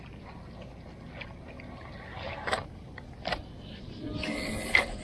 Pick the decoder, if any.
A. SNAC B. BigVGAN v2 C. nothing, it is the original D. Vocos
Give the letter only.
C